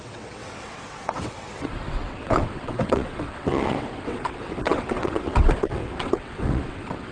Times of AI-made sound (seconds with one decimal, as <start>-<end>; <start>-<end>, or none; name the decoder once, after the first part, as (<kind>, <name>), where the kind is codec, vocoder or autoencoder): 0.0-7.1 (vocoder, WaveNeXt)